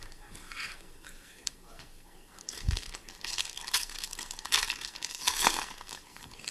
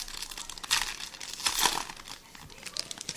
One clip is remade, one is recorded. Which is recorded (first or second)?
second